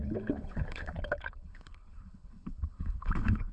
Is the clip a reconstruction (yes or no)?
yes